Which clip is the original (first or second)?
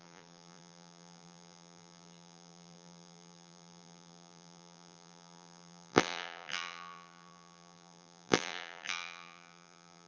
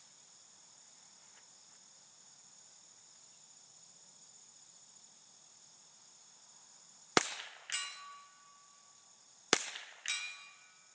second